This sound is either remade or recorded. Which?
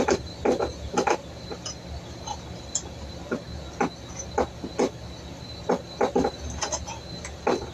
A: recorded